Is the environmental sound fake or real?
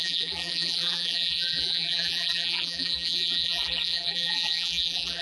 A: fake